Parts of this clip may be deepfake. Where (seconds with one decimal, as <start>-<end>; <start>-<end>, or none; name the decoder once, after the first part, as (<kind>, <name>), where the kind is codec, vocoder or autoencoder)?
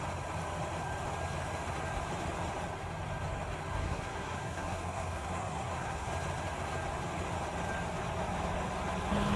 3.7-6.1 (codec, SNAC)